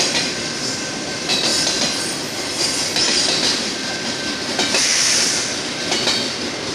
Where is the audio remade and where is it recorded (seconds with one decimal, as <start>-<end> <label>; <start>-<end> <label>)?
0.0-1.5 remade; 1.5-3.0 recorded; 3.0-4.9 remade; 4.9-6.7 recorded